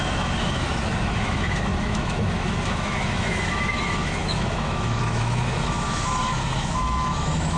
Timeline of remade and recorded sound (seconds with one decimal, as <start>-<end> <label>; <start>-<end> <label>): 0.0-7.6 remade